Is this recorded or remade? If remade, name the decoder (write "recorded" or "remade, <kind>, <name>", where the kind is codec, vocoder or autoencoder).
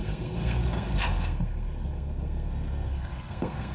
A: remade, codec, SNAC